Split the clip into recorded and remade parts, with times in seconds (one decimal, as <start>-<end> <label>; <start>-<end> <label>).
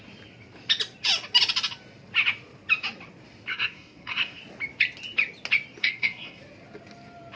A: 0.0-3.5 recorded; 3.5-4.4 remade; 4.4-5.8 recorded; 5.8-6.4 remade; 6.4-7.4 recorded